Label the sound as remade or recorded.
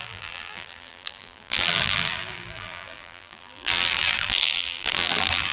remade